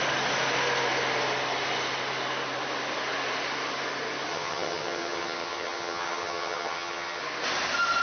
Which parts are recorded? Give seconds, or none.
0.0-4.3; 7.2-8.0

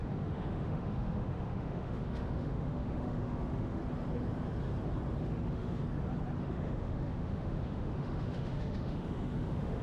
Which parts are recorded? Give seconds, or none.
3.8-5.2; 5.8-6.4

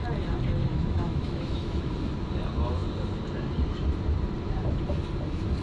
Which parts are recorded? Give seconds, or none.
0.0-0.7; 1.9-5.6

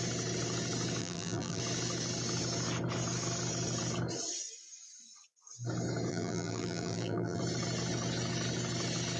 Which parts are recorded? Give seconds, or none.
0.0-1.0; 1.6-6.1; 7.4-9.2

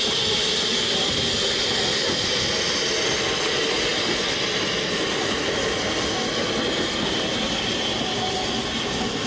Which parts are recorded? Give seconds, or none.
0.0-9.3